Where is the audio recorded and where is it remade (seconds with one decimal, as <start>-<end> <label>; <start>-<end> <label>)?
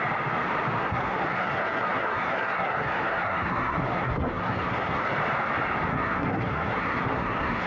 0.0-0.8 recorded; 0.8-5.0 remade; 5.0-5.9 recorded; 5.9-7.7 remade